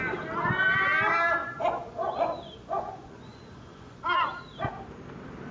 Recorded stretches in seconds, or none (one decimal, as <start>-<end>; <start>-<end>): 0.0-1.4; 4.0-5.5